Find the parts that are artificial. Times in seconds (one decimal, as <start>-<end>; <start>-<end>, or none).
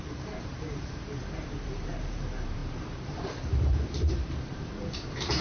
0.0-5.4